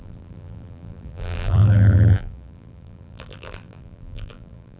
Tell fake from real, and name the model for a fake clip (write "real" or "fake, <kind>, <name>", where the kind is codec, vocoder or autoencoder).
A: fake, vocoder, BigVGAN v2